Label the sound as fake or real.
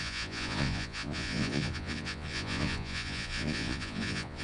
fake